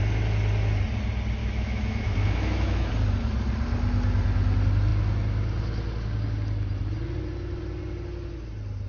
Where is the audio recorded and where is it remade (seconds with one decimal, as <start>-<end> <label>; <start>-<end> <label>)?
0.0-1.4 recorded; 1.4-2.9 remade; 2.9-8.9 recorded